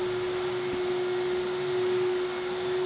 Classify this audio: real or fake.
real